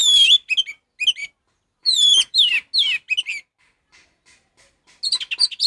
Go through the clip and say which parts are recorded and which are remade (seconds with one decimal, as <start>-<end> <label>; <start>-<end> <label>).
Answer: 0.0-1.8 recorded; 1.8-2.5 remade; 2.5-5.7 recorded